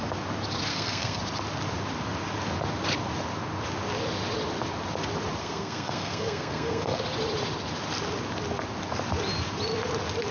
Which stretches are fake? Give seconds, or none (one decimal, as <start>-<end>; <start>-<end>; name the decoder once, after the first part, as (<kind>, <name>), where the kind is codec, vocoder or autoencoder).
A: 0.7-1.2 (codec, SNAC); 5.4-7.0